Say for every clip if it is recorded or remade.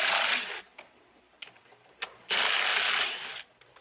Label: recorded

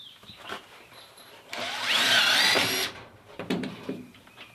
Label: remade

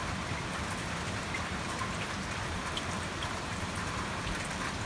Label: remade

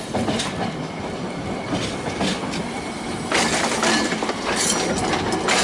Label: recorded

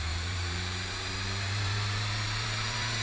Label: remade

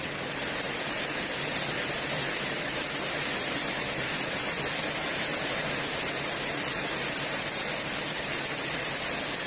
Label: recorded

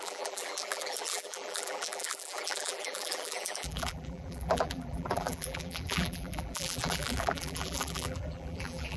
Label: remade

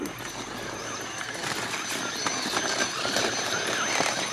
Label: recorded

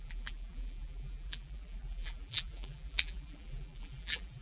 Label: remade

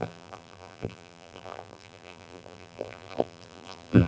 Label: remade